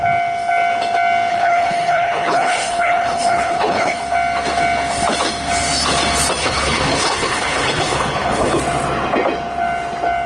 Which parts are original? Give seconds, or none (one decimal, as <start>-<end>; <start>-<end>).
0.0-1.3; 4.0-6.4; 8.6-10.3